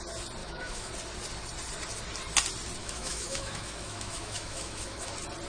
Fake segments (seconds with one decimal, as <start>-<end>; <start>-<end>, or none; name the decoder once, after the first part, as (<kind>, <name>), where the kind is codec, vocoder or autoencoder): 0.4-0.9 (autoencoder, DAC-VAE); 2.8-5.1